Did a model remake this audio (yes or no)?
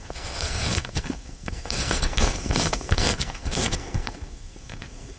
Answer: yes